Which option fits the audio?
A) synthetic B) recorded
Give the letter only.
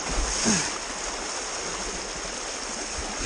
B